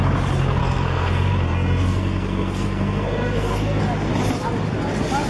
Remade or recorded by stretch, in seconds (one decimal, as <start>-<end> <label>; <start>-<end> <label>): 0.0-0.6 recorded; 0.6-3.8 remade; 3.8-5.3 recorded